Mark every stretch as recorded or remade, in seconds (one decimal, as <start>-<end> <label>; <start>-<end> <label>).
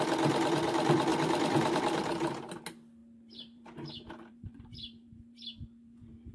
0.0-3.0 recorded; 3.0-6.3 remade